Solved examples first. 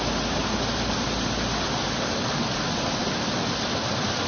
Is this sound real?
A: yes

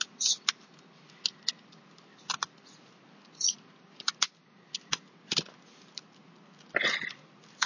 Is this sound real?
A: yes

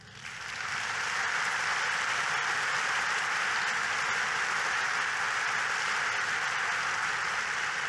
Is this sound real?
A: yes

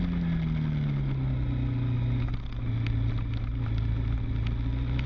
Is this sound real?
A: yes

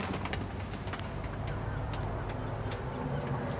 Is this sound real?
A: yes